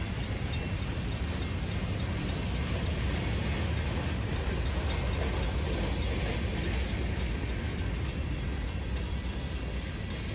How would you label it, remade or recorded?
recorded